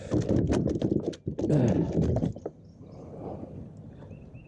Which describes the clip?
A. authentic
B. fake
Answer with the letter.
A